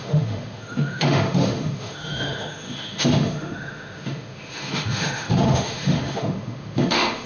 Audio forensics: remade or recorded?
remade